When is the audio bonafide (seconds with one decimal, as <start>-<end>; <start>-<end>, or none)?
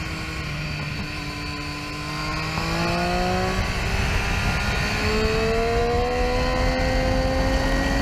0.0-8.0